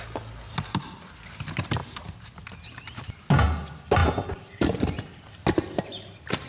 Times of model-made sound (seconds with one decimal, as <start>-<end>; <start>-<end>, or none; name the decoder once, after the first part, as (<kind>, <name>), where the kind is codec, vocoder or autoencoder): none